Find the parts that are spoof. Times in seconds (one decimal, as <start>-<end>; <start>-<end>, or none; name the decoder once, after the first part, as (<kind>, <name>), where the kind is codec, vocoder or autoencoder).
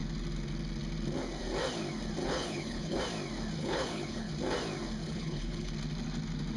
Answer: 2.2-3.0 (codec, HILCodec); 3.6-4.3; 5.0-5.7